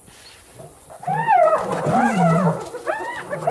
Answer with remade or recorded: remade